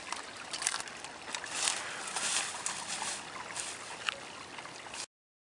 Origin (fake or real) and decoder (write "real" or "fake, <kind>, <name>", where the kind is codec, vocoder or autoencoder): real